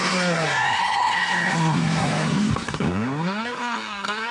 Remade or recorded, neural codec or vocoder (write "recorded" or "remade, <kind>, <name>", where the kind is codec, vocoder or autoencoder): remade, codec, SNAC